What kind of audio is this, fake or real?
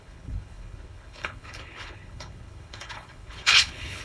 fake